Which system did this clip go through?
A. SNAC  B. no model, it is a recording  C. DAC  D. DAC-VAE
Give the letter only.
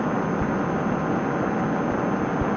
B